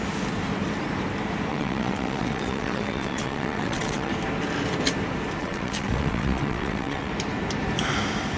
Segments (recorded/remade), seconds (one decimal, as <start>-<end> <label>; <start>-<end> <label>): 0.0-1.5 recorded; 1.5-4.1 remade; 4.1-5.4 recorded; 5.4-7.1 remade; 7.1-8.4 recorded